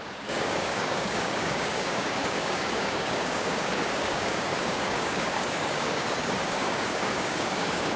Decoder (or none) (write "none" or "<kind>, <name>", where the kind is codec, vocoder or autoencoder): codec, DAC